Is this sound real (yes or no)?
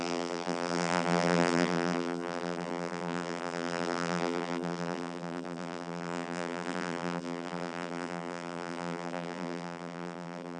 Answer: no